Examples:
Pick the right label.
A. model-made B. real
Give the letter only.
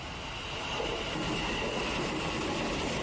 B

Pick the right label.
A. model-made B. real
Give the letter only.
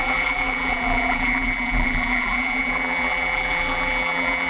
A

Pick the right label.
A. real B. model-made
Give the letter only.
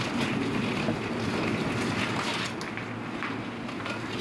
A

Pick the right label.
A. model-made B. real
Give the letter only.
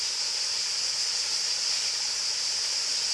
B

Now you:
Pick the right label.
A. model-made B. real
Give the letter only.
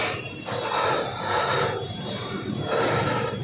A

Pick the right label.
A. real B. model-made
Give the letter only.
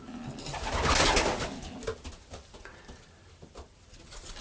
A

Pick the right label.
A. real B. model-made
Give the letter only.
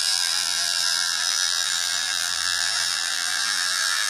B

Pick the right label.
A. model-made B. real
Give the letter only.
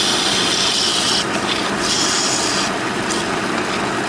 B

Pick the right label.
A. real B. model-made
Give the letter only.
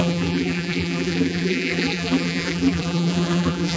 B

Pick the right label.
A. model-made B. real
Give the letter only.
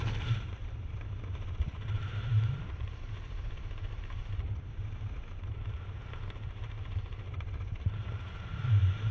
A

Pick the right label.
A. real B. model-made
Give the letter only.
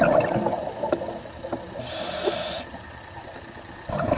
A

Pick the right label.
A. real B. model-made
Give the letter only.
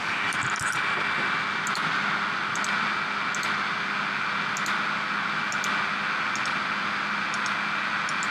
A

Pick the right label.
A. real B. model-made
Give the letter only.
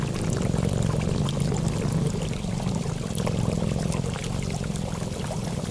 A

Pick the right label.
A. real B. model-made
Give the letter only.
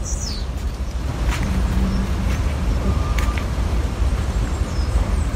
B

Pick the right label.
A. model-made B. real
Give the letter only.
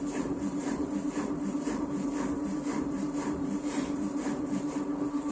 A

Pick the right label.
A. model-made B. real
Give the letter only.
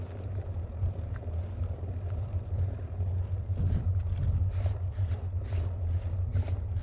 B